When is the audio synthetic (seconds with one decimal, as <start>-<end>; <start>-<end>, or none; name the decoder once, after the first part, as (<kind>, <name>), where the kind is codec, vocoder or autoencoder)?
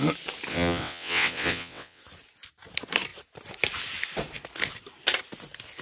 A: 0.5-2.0 (vocoder, WaveNeXt)